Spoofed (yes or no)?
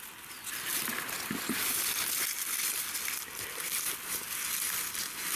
no